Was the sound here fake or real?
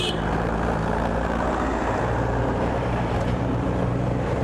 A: fake